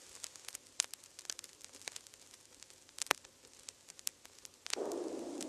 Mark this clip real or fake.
real